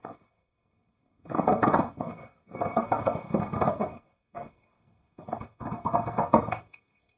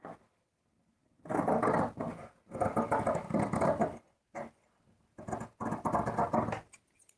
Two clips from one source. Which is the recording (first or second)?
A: second